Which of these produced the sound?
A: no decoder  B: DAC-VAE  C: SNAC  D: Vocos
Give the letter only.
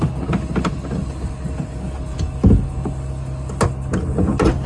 A